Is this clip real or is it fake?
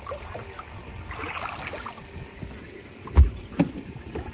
real